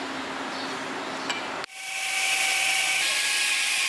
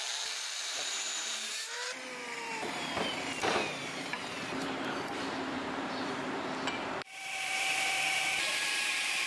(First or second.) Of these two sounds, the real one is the first